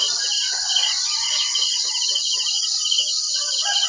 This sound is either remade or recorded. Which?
recorded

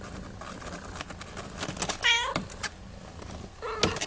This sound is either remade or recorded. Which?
recorded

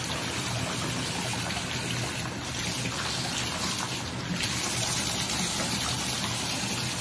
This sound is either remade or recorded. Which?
recorded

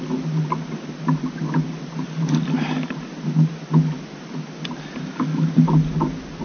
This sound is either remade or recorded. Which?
recorded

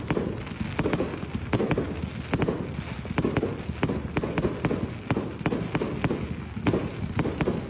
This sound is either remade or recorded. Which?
recorded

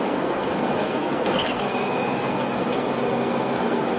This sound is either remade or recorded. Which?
remade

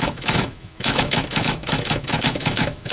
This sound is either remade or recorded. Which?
remade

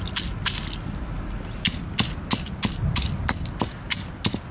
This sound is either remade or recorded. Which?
recorded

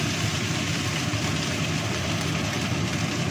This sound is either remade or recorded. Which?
recorded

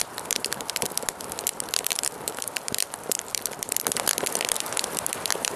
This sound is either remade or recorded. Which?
remade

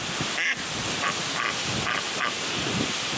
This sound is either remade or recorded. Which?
recorded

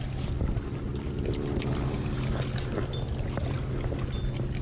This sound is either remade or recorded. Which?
recorded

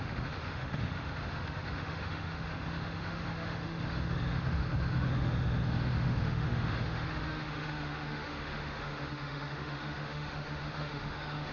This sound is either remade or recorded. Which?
remade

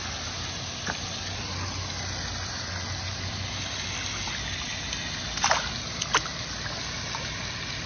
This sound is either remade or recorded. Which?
recorded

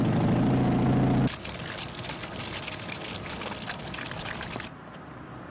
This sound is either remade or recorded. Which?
recorded